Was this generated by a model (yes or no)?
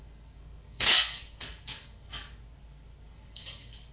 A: yes